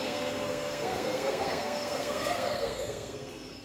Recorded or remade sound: remade